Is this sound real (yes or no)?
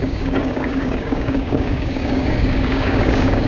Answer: no